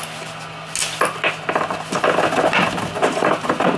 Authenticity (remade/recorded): recorded